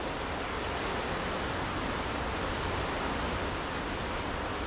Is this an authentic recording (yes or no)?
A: yes